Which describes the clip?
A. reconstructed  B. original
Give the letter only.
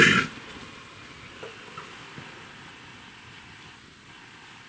B